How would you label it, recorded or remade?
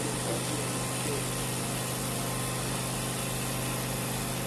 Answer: recorded